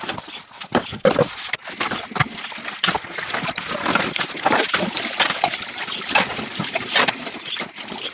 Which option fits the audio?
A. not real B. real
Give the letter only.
A